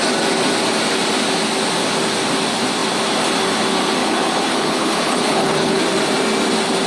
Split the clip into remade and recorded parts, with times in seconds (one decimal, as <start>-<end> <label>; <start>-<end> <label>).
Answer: 0.0-4.0 recorded; 4.0-5.8 remade; 5.8-6.9 recorded